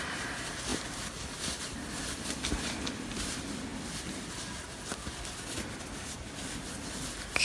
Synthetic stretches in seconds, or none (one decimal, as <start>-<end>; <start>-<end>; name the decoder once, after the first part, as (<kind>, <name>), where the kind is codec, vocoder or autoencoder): none